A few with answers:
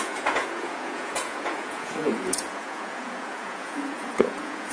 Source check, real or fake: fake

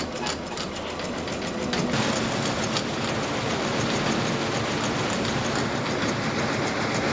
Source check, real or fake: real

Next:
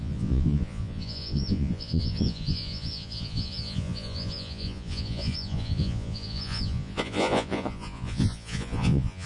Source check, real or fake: fake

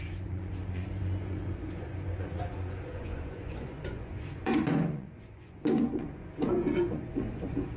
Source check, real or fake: fake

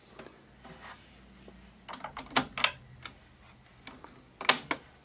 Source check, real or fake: real